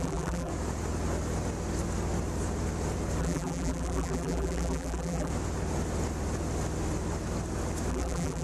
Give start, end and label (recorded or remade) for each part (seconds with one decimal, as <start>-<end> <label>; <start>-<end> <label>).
0.0-0.5 remade; 0.5-3.2 recorded; 3.2-5.3 remade; 5.3-7.9 recorded; 7.9-8.4 remade